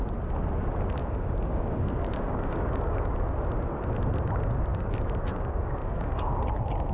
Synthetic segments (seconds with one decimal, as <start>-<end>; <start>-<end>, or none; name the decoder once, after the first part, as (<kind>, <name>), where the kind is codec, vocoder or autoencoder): 1.0-3.1 (codec, DAC); 4.7-6.3